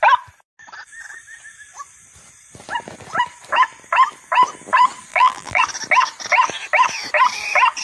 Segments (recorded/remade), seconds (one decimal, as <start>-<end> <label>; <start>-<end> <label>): 0.0-5.1 recorded; 5.1-5.6 remade; 5.6-7.8 recorded